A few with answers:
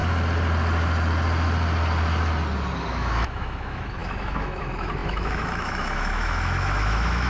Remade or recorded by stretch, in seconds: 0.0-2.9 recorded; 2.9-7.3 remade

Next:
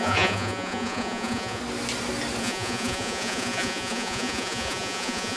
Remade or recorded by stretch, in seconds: 0.0-1.6 remade; 1.6-2.4 recorded; 2.4-5.4 remade

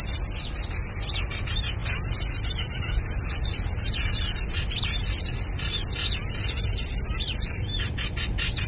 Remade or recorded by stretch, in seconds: 0.0-8.7 recorded

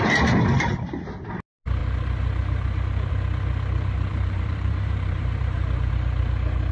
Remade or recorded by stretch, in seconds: 0.0-4.1 recorded; 4.1-5.9 remade; 5.9-6.7 recorded

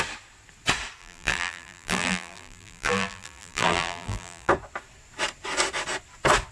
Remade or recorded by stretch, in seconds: 0.0-1.0 recorded; 1.0-4.5 remade; 4.5-6.5 recorded

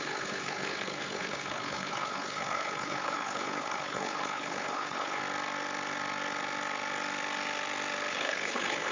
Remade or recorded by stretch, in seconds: 0.0-5.2 remade; 5.2-8.1 recorded; 8.1-8.9 remade